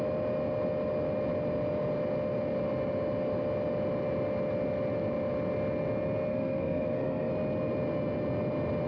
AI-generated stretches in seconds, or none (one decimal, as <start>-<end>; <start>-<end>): 6.3-7.3